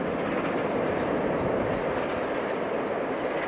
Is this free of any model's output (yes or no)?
yes